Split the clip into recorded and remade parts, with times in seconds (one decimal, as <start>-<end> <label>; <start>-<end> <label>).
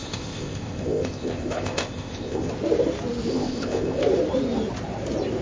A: 0.0-2.5 remade; 2.5-3.3 recorded; 3.3-4.0 remade; 4.0-5.4 recorded